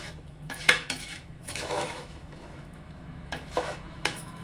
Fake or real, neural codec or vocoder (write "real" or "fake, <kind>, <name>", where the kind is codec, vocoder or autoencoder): fake, autoencoder, DAC-VAE